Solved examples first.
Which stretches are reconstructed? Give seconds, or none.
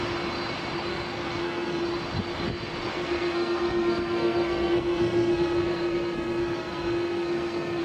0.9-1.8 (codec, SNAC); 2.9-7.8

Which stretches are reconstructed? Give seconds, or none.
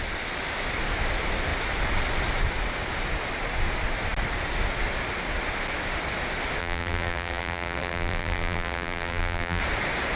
6.6-9.6 (vocoder, BigVGAN v2)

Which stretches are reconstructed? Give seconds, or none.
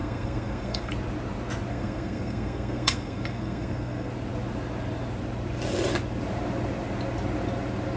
0.0-0.9 (codec, SNAC); 1.7-4.1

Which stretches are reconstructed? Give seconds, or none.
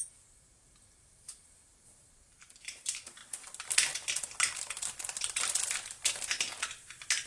0.0-3.2 (vocoder, BigVGAN v2)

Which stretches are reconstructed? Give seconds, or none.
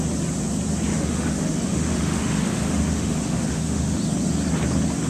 0.9-4.0 (autoencoder, DAC-VAE)